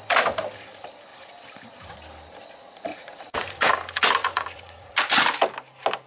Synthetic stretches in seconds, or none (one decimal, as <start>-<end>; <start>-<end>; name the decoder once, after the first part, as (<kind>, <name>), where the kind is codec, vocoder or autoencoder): 2.9-3.7 (vocoder, Vocos); 4.2-4.9